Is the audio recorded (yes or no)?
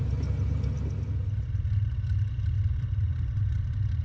yes